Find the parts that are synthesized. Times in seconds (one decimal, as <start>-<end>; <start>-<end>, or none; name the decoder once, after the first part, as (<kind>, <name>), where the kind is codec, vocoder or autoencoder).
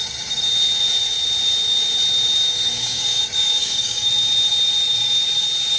2.5-3.2 (codec, DAC); 3.6-4.1